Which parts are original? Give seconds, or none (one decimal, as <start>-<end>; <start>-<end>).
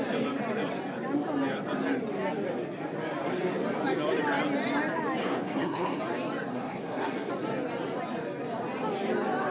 0.0-5.2; 6.0-6.5; 7.3-9.5